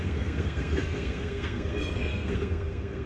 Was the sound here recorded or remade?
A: remade